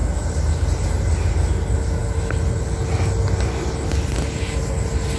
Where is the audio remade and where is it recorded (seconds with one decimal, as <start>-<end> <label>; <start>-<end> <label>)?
0.0-5.2 recorded

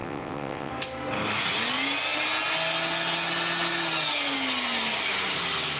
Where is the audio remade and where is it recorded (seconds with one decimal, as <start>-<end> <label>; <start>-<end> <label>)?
0.0-0.7 remade; 0.7-5.8 recorded

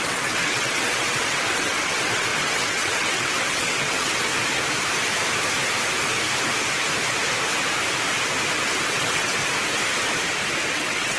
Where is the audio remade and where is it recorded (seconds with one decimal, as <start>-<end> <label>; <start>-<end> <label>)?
0.0-4.3 remade; 4.3-8.9 recorded; 8.9-9.4 remade; 9.4-10.7 recorded; 10.7-11.2 remade